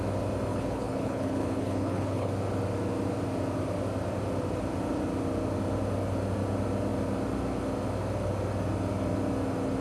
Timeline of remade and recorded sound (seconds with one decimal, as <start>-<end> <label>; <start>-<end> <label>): 0.0-0.5 recorded; 0.5-2.3 remade; 2.3-9.8 recorded